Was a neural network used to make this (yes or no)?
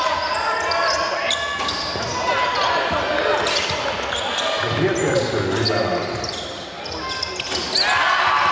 no